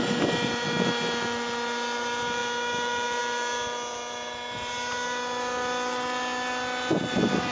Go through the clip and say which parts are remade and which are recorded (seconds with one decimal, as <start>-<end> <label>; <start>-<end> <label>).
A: 0.0-7.5 recorded